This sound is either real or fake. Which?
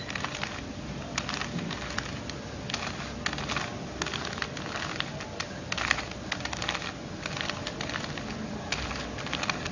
real